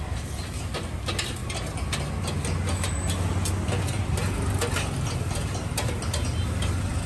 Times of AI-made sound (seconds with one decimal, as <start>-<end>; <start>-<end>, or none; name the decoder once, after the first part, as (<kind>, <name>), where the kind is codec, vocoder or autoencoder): none